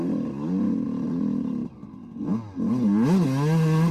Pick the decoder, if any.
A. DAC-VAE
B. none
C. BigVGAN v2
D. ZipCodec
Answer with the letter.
B